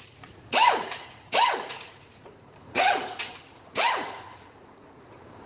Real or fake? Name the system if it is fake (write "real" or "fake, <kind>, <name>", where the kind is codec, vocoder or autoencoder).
fake, vocoder, Vocos